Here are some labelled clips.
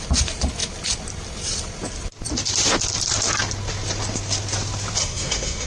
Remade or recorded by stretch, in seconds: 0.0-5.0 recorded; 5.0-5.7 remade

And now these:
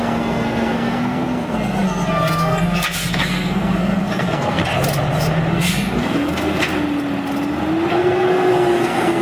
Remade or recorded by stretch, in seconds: 0.0-4.6 remade; 4.6-5.5 recorded; 5.5-6.7 remade; 6.7-7.9 recorded; 7.9-9.2 remade

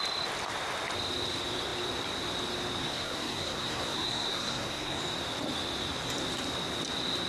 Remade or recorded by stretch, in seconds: 0.0-2.8 recorded; 2.8-5.0 remade; 5.0-7.3 recorded

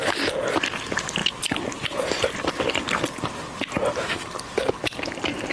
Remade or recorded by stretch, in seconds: 0.0-5.5 recorded

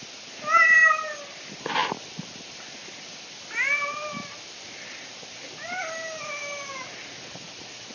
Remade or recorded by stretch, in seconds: 0.0-7.9 recorded

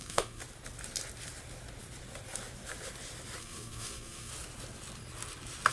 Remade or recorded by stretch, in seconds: 0.0-0.4 remade; 0.4-3.4 recorded; 3.4-4.3 remade; 4.3-5.7 recorded

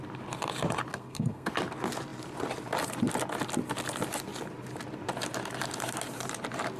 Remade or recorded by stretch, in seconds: 0.0-0.9 recorded; 0.9-1.5 remade; 1.5-6.8 recorded

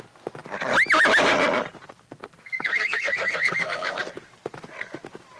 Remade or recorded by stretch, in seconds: 0.0-2.2 recorded; 2.2-4.0 remade; 4.0-5.4 recorded